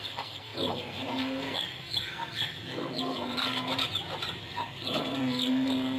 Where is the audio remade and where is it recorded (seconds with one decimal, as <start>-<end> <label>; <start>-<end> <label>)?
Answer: 0.0-3.7 remade; 3.7-4.4 recorded; 4.4-6.0 remade

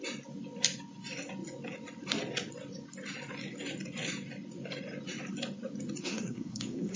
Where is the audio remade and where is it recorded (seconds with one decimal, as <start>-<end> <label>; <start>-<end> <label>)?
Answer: 0.0-6.0 recorded; 6.0-7.0 remade

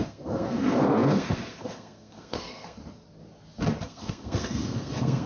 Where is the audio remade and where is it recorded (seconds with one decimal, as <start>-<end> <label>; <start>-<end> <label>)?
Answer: 0.0-2.8 remade; 2.8-3.8 recorded; 3.8-5.3 remade

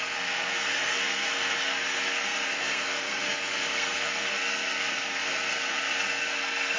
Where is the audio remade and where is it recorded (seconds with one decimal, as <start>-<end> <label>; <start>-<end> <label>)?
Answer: 0.0-6.8 remade